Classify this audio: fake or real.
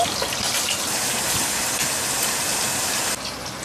real